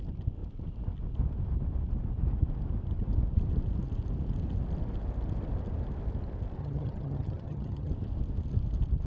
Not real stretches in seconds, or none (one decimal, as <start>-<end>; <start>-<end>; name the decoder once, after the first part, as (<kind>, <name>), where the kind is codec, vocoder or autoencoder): 6.6-7.9 (vocoder, HiFi-GAN)